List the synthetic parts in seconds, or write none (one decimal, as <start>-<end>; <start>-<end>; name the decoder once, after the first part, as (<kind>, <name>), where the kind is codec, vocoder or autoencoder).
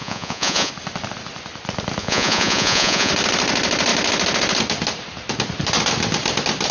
0.0-0.7 (vocoder, Vocos); 2.0-3.1